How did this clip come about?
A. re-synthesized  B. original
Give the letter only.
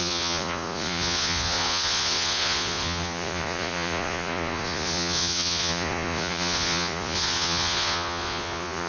A